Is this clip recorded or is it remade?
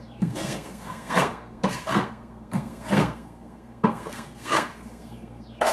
remade